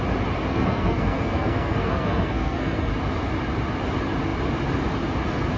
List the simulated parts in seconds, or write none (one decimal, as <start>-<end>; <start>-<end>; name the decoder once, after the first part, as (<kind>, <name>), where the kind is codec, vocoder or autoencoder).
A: 0.5-2.9 (codec, SNAC)